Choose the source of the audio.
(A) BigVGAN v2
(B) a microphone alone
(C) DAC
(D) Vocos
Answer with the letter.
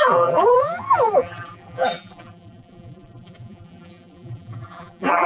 A